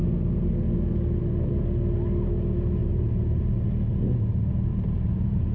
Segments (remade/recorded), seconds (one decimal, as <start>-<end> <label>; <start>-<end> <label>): 0.0-2.8 recorded; 2.8-3.4 remade; 3.4-4.7 recorded; 4.7-5.5 remade